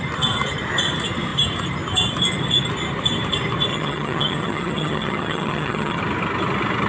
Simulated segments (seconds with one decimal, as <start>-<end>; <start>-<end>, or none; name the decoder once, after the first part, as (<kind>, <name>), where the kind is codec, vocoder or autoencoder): 3.7-6.0 (vocoder, HiFi-GAN)